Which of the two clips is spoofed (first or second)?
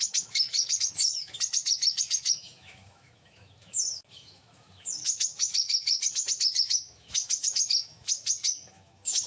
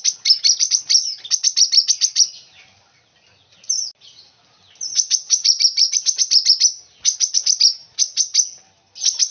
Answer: first